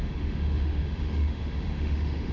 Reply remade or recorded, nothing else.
remade